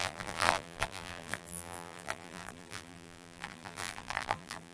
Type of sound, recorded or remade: remade